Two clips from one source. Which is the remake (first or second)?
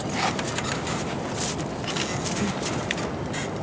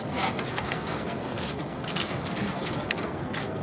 second